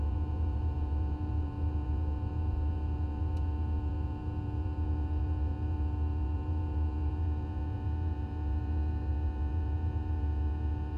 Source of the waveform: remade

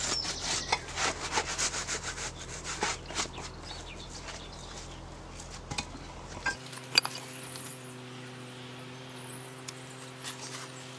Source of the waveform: recorded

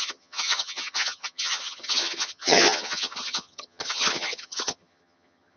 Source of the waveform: remade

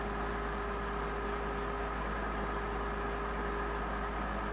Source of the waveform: recorded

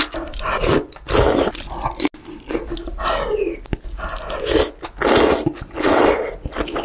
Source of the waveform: recorded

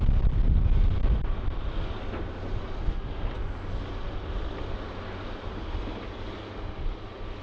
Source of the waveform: recorded